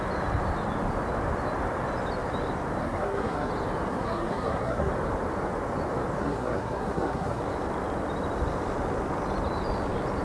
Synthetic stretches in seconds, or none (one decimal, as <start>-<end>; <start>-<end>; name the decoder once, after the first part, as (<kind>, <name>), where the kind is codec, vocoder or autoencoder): 2.8-3.5 (codec, SNAC); 3.9-4.9; 6.2-7.4